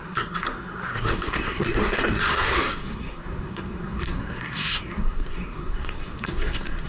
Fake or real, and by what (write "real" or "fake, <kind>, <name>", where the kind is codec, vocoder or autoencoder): fake, codec, SNAC